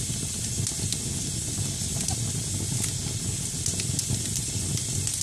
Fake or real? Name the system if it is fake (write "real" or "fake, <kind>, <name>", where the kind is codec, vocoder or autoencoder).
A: real